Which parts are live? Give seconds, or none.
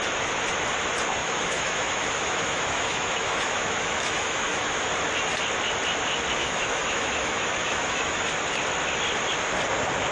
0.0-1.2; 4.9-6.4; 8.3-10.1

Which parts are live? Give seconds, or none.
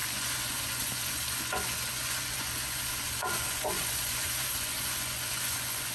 none